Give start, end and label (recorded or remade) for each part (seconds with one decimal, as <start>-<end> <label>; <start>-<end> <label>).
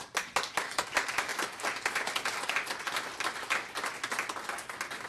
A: 0.0-5.1 recorded